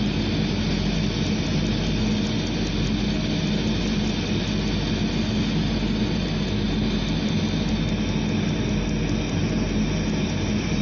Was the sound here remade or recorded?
recorded